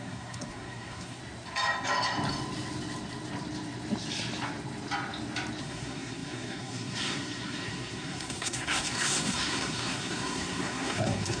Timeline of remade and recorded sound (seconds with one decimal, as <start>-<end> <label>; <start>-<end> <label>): 0.0-1.2 remade; 1.2-5.6 recorded; 5.6-11.4 remade